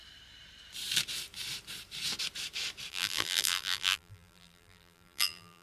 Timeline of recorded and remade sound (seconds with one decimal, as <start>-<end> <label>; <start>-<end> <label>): 0.0-2.9 recorded; 2.9-5.6 remade